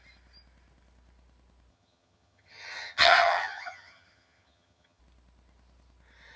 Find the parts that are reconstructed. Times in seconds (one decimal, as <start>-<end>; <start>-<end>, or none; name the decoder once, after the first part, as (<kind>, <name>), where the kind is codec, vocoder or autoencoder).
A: 1.7-5.0 (vocoder, HiFi-GAN)